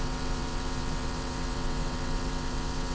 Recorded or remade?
remade